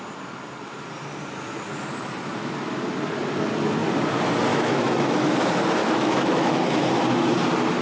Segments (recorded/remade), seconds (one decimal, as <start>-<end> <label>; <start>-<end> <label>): 0.0-4.5 recorded; 4.5-5.3 remade; 5.3-5.8 recorded; 5.8-6.6 remade; 6.6-7.8 recorded